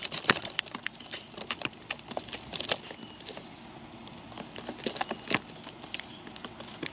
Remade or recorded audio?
recorded